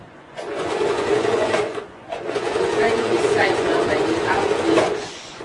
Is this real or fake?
fake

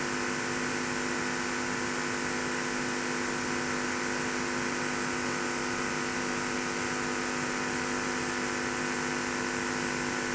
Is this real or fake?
real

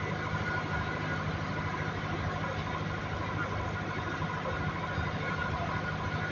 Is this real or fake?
real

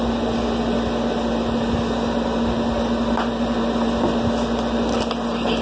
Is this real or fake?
real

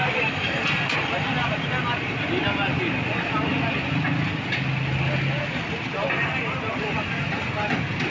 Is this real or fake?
real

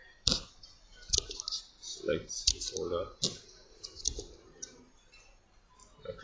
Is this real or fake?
real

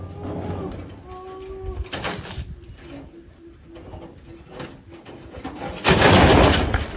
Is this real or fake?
real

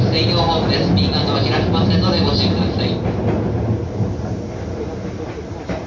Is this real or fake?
real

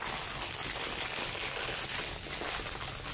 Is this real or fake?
real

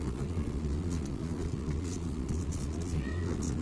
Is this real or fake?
fake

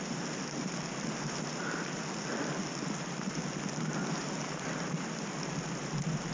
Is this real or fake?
real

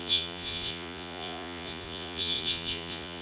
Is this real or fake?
fake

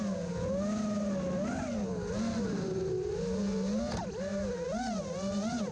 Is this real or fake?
real